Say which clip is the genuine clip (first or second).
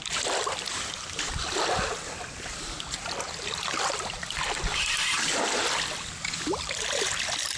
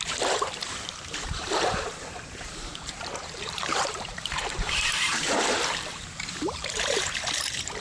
first